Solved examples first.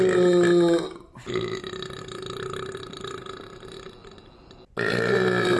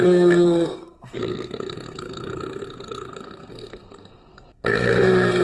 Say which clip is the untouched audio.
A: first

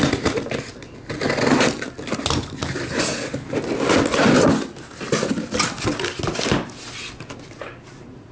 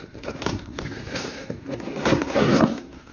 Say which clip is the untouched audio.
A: first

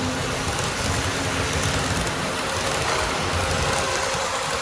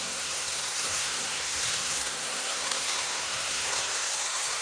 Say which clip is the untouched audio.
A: first